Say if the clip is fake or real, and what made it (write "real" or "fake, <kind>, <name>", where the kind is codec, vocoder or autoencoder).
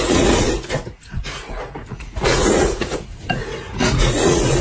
fake, vocoder, Vocos